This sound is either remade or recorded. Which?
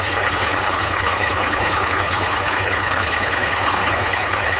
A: remade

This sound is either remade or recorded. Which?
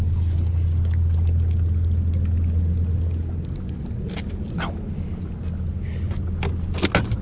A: recorded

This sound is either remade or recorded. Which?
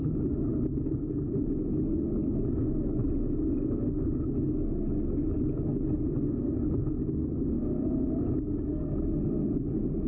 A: recorded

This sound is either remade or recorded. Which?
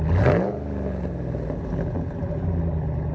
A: recorded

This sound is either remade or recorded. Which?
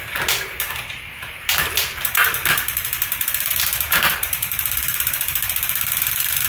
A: remade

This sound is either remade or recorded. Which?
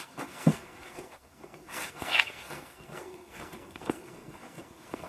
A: remade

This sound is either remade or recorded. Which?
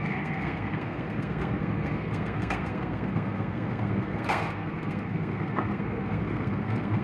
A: remade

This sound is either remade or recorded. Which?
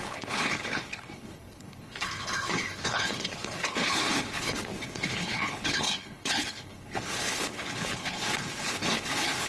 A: remade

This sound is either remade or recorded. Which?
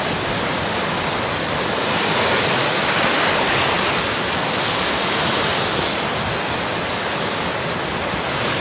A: recorded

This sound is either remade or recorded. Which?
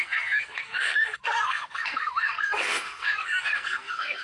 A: remade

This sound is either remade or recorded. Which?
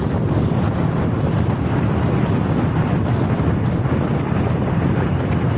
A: recorded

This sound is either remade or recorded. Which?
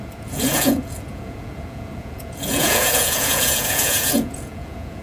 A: remade